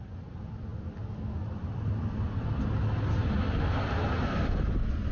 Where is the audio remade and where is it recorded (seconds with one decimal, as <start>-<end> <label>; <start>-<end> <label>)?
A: 0.0-5.1 recorded